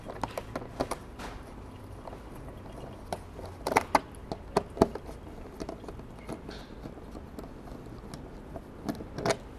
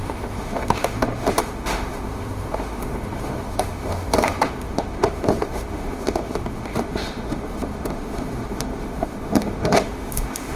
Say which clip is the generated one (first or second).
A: second